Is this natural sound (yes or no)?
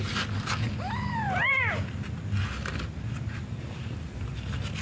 yes